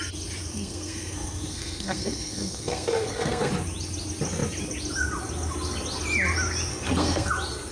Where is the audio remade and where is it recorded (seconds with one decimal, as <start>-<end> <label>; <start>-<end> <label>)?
0.0-0.5 recorded; 0.5-3.5 remade; 3.5-6.7 recorded; 6.7-7.3 remade; 7.3-7.7 recorded